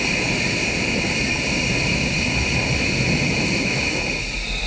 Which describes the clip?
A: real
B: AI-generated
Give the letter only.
A